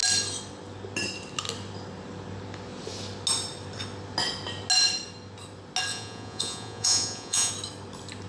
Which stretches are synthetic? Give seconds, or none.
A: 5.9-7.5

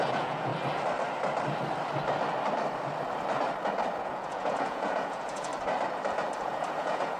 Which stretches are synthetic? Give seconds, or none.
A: 0.0-0.5; 4.0-5.5; 6.4-7.2

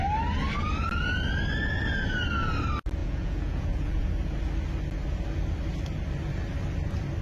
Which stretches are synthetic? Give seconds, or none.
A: 3.0-4.1